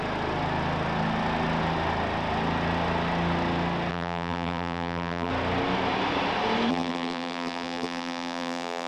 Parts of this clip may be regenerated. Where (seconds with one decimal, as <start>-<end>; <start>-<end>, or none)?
3.9-5.3; 6.7-8.9